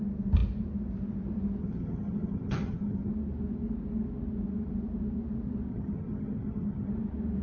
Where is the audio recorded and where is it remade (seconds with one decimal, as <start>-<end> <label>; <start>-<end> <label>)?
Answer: 0.0-1.6 recorded; 1.6-3.1 remade; 3.1-5.7 recorded; 5.7-6.9 remade; 6.9-7.4 recorded